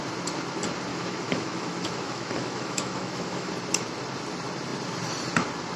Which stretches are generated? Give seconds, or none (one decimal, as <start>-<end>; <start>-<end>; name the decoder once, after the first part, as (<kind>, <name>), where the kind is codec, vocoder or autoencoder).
0.9-3.5 (autoencoder, DAC-VAE)